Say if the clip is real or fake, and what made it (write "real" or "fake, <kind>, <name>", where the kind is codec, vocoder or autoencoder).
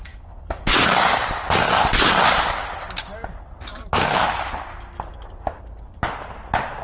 real